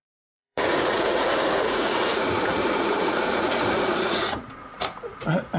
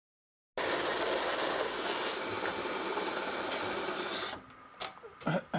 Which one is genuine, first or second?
second